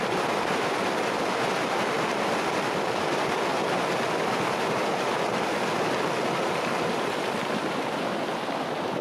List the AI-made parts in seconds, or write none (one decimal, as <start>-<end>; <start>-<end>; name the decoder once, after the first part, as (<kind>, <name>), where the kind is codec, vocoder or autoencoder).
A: none